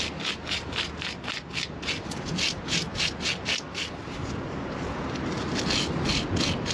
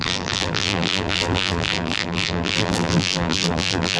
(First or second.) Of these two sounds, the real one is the first